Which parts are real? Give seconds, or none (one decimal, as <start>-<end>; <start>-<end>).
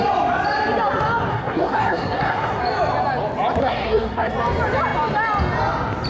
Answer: 0.0-1.3; 2.6-3.6; 4.3-6.1